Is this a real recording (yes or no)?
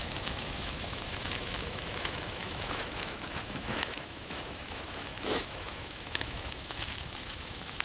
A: no